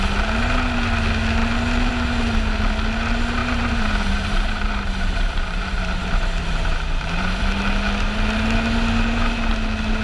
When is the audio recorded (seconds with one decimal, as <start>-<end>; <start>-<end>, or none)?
0.0-3.4; 7.4-10.0